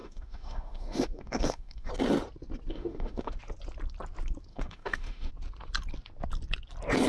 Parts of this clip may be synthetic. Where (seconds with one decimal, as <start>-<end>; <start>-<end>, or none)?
0.0-1.9; 2.7-3.3; 4.5-5.3